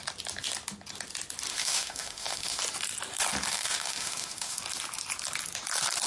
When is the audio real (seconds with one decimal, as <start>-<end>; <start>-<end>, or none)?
0.0-1.5; 2.6-3.5; 4.6-6.1

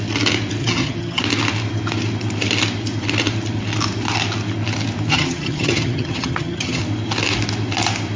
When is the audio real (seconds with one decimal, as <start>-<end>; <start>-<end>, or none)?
0.0-0.6; 1.2-5.1; 6.8-8.2